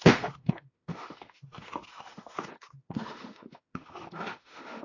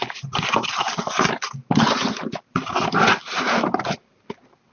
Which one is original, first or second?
second